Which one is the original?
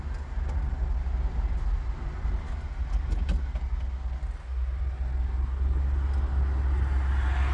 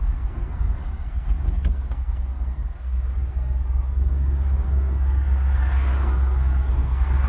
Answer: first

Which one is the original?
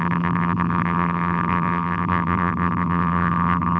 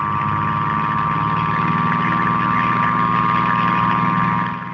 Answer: second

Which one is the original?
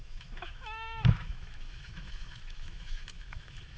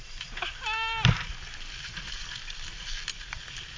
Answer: second